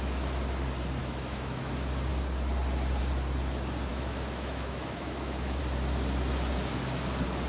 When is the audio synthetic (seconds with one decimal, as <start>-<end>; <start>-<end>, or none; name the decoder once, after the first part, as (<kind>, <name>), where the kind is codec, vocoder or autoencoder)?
1.0-1.7 (autoencoder, DAC-VAE); 3.9-5.6